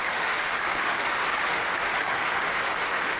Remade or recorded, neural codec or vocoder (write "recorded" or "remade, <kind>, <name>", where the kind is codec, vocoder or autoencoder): remade, autoencoder, DAC-VAE